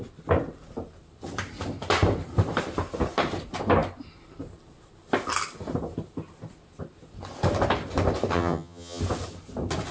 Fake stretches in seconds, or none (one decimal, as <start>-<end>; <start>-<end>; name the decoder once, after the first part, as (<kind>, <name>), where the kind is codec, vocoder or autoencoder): 8.3-9.0 (vocoder, HiFi-GAN)